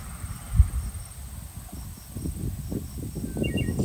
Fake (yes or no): no